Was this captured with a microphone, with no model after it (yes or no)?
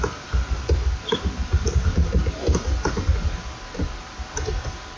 yes